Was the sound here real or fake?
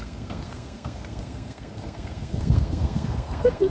fake